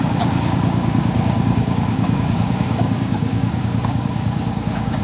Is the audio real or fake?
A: fake